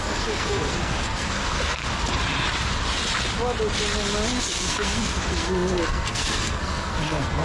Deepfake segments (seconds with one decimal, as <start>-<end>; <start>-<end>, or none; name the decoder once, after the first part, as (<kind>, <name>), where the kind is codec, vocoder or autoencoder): 0.0-1.8 (codec, SNAC); 4.4-7.4